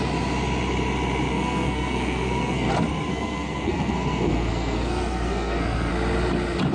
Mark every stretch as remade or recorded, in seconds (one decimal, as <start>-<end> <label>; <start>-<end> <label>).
0.0-1.3 recorded; 1.3-2.7 remade; 2.7-3.1 recorded; 3.1-5.9 remade; 5.9-6.7 recorded